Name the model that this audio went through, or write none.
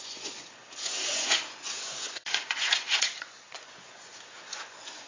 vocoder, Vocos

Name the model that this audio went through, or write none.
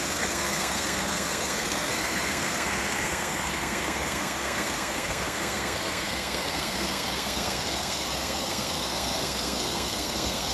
codec, SNAC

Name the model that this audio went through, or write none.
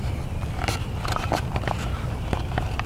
none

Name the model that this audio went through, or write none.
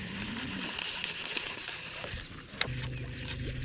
none